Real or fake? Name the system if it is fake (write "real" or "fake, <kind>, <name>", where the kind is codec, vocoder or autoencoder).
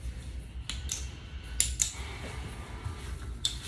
real